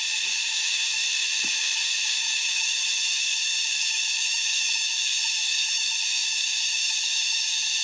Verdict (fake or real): fake